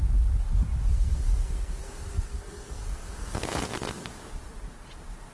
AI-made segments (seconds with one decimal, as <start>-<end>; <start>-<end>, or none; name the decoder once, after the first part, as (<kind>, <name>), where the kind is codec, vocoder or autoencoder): 0.9-4.1 (codec, SNAC)